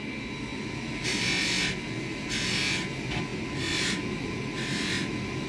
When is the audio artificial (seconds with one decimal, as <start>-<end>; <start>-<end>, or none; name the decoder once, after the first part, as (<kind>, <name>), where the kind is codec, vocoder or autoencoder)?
none